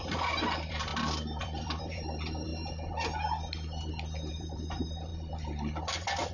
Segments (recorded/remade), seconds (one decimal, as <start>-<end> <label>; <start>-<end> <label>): 0.0-0.9 remade; 0.9-1.4 recorded; 1.4-2.5 remade; 2.5-4.3 recorded; 4.3-6.3 remade